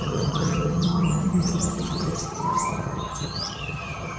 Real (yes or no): no